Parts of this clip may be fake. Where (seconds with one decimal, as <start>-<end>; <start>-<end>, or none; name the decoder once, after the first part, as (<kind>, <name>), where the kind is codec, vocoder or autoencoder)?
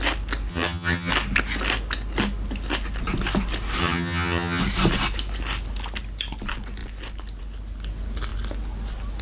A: 0.5-1.1 (vocoder, HiFi-GAN); 3.8-4.6